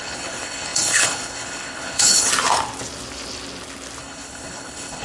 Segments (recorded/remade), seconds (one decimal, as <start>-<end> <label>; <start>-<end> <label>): 0.0-2.3 remade; 2.3-4.0 recorded; 4.0-5.0 remade